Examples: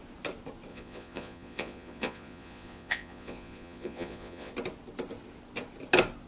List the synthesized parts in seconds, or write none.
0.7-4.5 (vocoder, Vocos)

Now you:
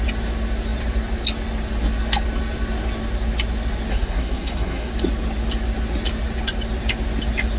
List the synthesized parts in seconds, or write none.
3.9-4.9 (codec, SNAC)

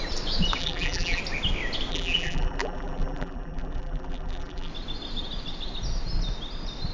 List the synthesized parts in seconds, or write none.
0.6-1.2 (vocoder, BigVGAN v2); 1.9-4.7

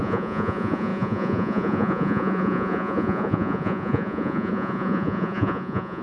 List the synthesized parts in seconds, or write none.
0.0-6.0 (vocoder, Vocos)

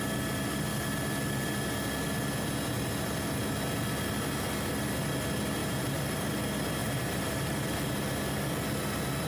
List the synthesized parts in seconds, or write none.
5.6-6.3 (vocoder, BigVGAN v2); 6.8-7.8

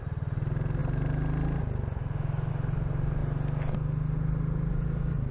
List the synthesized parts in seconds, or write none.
none